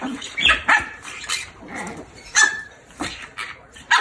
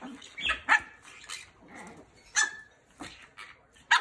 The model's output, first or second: first